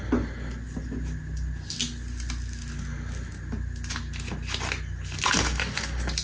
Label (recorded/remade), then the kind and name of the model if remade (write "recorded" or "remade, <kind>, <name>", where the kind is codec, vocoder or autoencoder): recorded